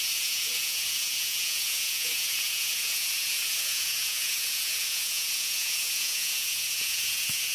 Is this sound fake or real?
fake